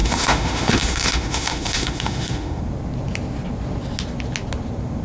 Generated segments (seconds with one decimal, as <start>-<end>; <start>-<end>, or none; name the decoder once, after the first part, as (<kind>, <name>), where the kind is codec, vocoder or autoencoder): 0.0-2.6 (autoencoder, DAC-VAE)